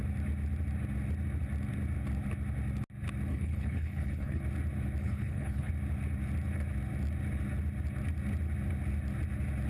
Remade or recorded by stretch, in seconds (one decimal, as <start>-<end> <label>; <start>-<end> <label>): 0.0-3.3 recorded; 3.3-4.4 remade; 4.4-5.0 recorded; 5.0-5.7 remade; 5.7-9.7 recorded